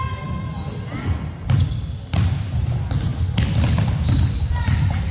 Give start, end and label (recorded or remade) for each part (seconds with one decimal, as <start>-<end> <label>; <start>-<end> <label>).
0.0-5.1 recorded